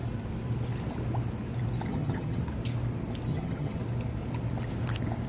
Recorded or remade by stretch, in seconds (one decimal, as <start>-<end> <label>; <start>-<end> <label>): 0.0-1.9 recorded; 1.9-2.4 remade; 2.4-3.3 recorded; 3.3-3.8 remade; 3.8-5.3 recorded